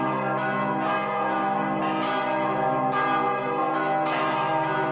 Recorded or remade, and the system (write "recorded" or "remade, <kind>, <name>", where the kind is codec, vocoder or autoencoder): recorded